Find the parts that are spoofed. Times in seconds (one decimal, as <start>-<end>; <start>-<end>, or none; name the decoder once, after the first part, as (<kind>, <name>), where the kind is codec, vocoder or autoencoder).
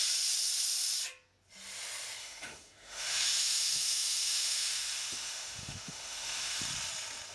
2.2-6.6 (autoencoder, DAC-VAE)